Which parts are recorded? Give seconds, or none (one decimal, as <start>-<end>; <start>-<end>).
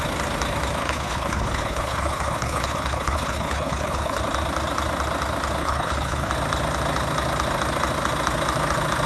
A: 0.0-0.8; 4.2-5.6; 6.3-9.1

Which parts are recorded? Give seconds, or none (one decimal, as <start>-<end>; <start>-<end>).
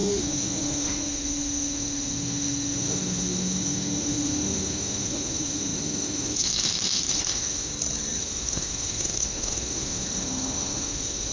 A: 7.7-8.2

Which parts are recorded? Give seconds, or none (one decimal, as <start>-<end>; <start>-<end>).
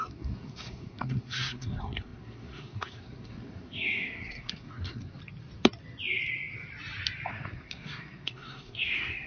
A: 5.2-7.3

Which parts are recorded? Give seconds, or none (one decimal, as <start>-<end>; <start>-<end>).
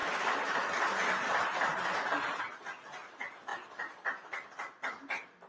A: 1.7-3.5; 4.7-5.5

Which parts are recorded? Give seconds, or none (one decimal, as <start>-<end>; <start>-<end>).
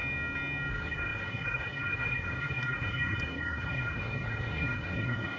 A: 0.0-0.7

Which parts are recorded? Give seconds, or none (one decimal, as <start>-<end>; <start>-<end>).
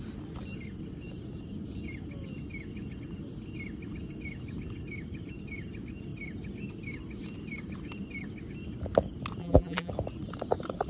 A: 0.0-9.4; 9.9-10.9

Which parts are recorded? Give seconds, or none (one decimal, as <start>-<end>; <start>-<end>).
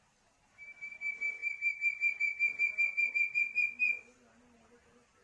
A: 0.0-5.2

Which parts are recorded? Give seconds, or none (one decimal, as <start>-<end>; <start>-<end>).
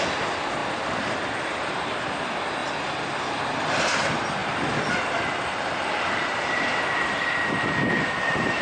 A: 0.0-0.6; 1.6-2.6; 3.2-4.4; 7.5-8.6